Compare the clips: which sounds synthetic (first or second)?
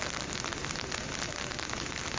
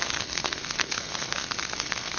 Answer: second